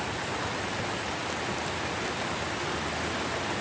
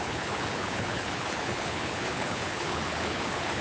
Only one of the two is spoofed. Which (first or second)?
second